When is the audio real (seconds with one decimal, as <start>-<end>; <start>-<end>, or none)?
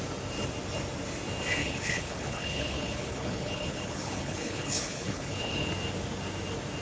0.0-1.6; 5.7-6.8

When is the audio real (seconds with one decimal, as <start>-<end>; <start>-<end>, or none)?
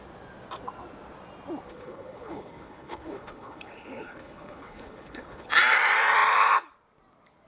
0.0-1.7; 5.5-7.5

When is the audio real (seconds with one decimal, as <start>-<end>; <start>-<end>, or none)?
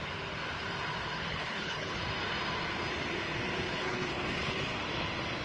0.0-1.3; 2.0-3.7; 4.6-5.4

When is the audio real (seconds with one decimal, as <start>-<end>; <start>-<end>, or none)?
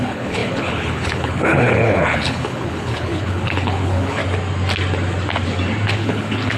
4.2-5.9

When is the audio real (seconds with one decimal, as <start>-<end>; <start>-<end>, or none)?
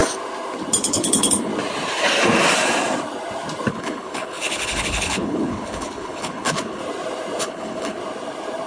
0.0-0.8; 1.5-3.7; 6.8-7.4; 8.0-8.7